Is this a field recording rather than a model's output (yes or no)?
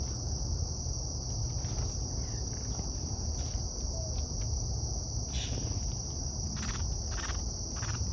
yes